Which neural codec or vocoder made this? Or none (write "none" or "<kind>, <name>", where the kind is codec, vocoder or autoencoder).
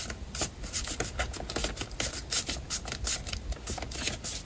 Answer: none